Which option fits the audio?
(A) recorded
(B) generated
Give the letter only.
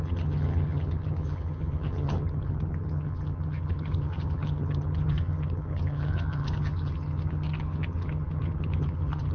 B